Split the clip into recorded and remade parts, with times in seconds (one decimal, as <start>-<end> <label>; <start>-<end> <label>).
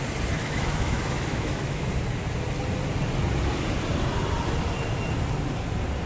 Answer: 0.0-0.4 recorded; 0.4-1.9 remade; 1.9-6.1 recorded